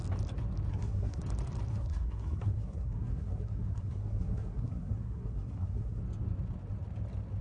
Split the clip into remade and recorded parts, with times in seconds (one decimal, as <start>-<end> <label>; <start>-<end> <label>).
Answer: 0.0-0.7 recorded; 0.7-1.2 remade; 1.2-1.7 recorded; 1.7-6.0 remade; 6.0-7.4 recorded